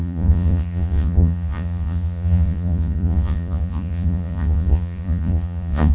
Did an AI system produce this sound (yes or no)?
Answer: yes